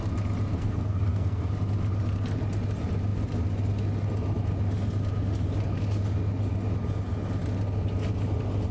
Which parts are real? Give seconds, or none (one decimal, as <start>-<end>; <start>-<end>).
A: 0.0-0.5; 1.5-8.7